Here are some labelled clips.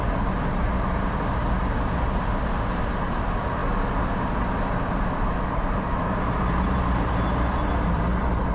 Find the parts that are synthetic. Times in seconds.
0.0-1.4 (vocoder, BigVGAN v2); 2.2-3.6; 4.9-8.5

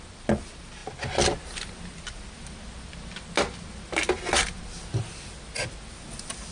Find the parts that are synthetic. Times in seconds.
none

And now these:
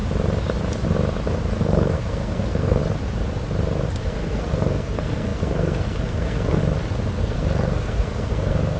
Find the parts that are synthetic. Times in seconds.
1.6-2.8 (codec, SNAC); 4.0-6.6; 7.2-8.8